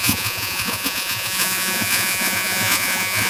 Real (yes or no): no